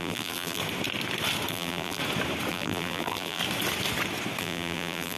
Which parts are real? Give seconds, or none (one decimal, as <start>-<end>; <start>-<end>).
0.6-1.5; 2.0-2.5; 3.4-4.4